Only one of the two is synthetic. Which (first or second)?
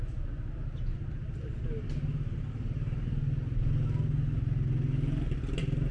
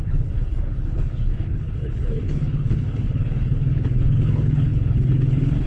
second